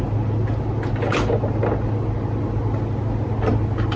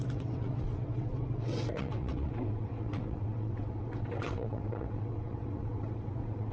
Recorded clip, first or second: first